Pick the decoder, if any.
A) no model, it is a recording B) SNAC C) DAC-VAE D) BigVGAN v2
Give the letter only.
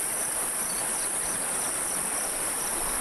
A